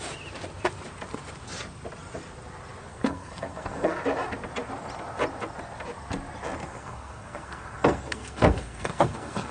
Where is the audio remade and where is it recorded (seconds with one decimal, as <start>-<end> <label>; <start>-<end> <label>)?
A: 0.0-2.9 recorded; 2.9-4.0 remade; 4.0-6.6 recorded; 6.6-9.5 remade